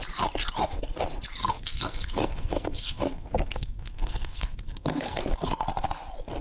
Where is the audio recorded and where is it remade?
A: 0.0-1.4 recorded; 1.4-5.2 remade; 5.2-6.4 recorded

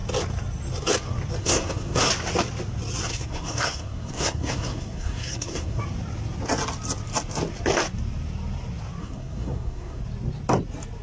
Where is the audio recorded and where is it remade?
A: 0.0-1.4 recorded; 1.4-2.1 remade; 2.1-3.1 recorded; 3.1-5.8 remade; 5.8-9.0 recorded; 9.0-10.0 remade; 10.0-11.0 recorded

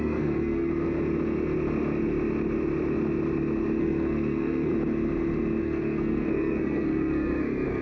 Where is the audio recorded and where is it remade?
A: 0.0-0.7 remade; 0.7-3.8 recorded; 3.8-4.7 remade; 4.7-5.6 recorded; 5.6-7.8 remade

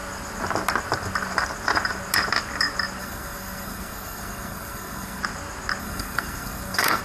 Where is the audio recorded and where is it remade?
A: 0.0-3.0 recorded; 3.0-5.2 remade; 5.2-5.8 recorded; 5.8-7.0 remade

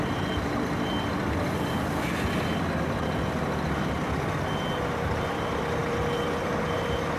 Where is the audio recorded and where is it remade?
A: 0.0-7.2 recorded

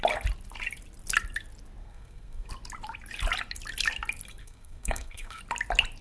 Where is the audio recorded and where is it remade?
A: 0.0-1.8 recorded; 1.8-2.5 remade; 2.5-4.4 recorded; 4.4-5.4 remade; 5.4-6.0 recorded